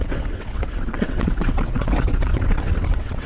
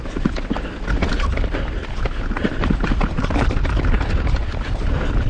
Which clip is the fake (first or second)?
first